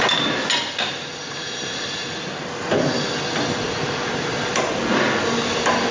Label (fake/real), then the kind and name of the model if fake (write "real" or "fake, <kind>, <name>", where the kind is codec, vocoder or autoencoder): real